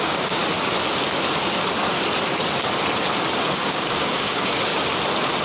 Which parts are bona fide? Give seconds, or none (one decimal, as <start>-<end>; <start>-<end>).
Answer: 0.4-3.6; 4.7-5.4